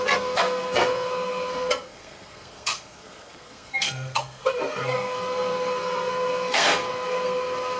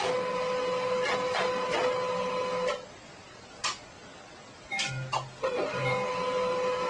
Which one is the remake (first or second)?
first